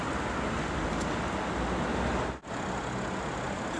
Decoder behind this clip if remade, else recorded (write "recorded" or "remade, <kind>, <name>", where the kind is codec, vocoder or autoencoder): recorded